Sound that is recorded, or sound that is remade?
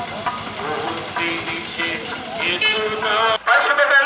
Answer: recorded